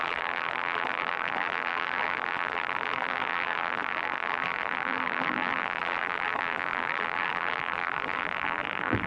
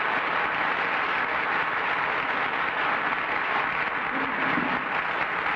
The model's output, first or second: first